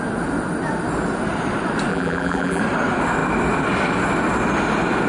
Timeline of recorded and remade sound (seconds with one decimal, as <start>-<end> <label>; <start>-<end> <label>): 0.0-1.9 recorded; 1.9-2.6 remade; 2.6-5.1 recorded